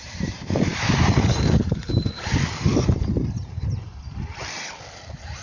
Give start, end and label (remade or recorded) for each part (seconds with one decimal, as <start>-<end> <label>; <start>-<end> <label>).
0.0-3.9 remade; 3.9-5.4 recorded